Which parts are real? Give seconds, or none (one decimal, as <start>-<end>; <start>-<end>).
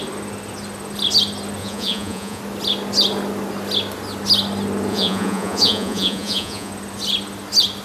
0.0-1.6; 2.4-4.9; 6.7-7.8